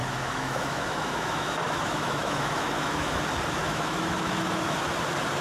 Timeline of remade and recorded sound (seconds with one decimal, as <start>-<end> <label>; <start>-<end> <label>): 0.0-3.2 remade; 3.2-3.6 recorded; 3.6-4.8 remade; 4.8-5.4 recorded